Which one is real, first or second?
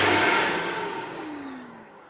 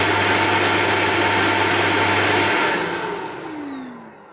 second